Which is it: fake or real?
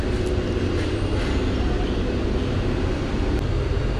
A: real